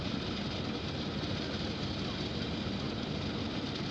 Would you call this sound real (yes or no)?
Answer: no